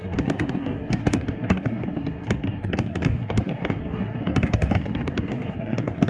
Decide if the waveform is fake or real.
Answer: fake